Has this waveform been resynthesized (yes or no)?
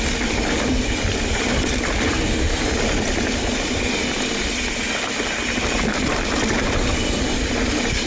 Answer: no